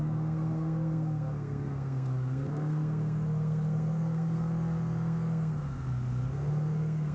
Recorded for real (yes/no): no